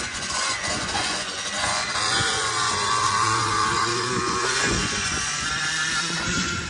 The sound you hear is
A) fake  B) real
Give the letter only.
A